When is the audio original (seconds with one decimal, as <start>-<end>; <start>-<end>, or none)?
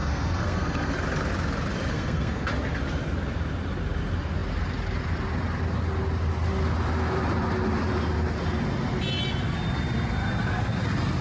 0.9-1.9; 2.5-11.2